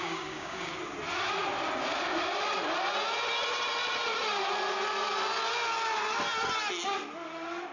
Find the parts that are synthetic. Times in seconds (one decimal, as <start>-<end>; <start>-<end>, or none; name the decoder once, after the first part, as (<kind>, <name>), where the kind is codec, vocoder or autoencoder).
0.0-0.7 (codec, DAC)